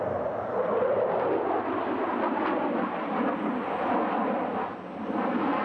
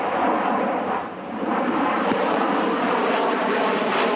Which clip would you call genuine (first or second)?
first